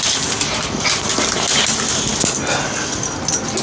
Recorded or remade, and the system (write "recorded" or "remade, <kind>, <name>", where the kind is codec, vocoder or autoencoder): recorded